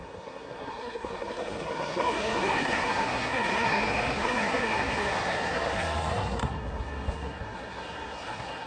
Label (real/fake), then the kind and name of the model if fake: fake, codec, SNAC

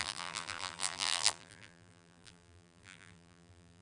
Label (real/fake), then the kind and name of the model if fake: fake, vocoder, BigVGAN v2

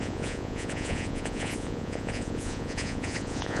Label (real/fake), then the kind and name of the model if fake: fake, vocoder, Vocos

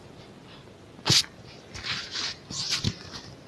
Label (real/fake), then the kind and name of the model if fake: real